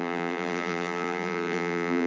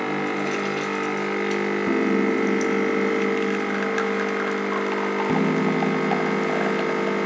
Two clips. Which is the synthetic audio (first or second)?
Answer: first